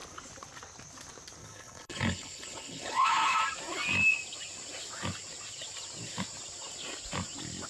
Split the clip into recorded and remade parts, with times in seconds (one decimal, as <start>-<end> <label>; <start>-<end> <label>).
0.0-1.4 recorded; 1.4-3.4 remade; 3.4-7.7 recorded